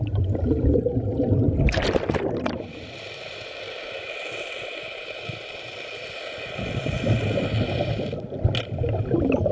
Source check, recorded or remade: recorded